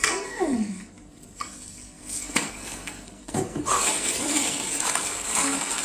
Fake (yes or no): yes